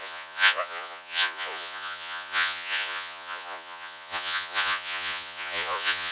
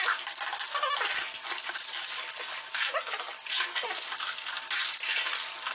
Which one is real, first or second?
second